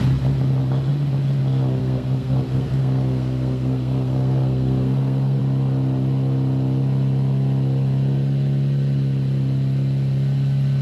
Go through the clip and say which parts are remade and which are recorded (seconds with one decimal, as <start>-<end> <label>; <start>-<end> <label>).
0.0-1.8 recorded; 1.8-5.4 remade; 5.4-10.8 recorded

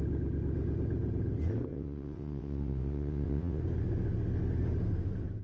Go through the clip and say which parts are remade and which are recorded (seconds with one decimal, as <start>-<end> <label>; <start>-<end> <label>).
0.0-1.7 recorded; 1.7-3.6 remade; 3.6-5.4 recorded